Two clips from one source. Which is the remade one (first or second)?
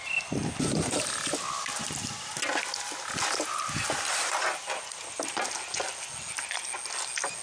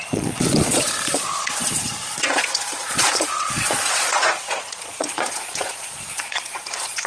second